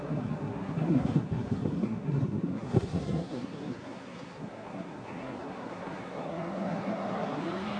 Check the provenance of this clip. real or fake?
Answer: fake